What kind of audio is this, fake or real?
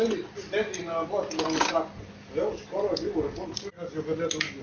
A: real